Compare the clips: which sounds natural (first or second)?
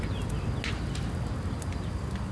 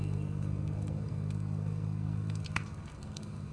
first